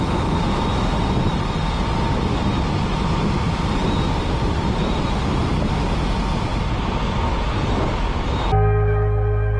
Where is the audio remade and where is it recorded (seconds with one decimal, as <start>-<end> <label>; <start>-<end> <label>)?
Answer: 0.0-9.6 recorded